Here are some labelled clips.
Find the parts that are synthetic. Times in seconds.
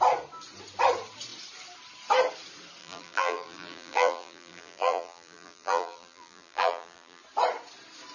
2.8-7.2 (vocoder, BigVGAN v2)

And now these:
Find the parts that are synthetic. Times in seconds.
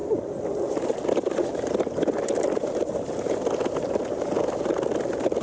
none